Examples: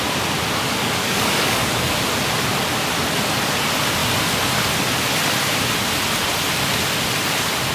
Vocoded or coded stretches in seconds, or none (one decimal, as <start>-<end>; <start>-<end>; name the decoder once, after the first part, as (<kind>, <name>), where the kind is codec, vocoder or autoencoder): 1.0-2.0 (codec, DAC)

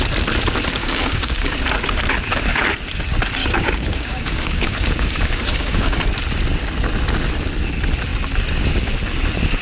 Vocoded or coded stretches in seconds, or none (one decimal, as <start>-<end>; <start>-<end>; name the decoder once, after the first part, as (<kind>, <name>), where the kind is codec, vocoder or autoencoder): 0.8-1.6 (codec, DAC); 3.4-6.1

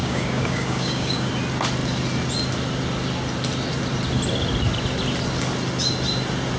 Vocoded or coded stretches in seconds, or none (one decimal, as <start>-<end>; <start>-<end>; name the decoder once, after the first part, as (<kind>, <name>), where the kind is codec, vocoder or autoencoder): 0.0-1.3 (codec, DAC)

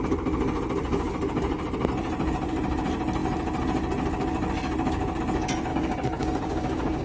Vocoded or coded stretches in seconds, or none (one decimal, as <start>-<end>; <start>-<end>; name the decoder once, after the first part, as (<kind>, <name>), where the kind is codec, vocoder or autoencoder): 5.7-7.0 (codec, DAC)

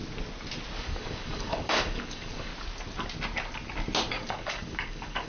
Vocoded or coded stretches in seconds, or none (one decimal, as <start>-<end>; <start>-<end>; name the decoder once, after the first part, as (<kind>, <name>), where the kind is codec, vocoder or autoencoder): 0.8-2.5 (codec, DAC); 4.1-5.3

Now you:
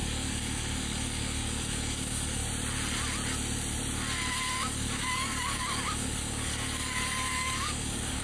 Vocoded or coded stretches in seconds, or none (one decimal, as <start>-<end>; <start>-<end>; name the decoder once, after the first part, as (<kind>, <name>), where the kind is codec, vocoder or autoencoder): 0.0-2.4 (codec, DAC); 4.5-8.2

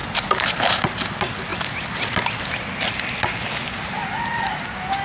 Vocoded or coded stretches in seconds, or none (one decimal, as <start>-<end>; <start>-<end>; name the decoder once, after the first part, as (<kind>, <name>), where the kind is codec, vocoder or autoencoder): none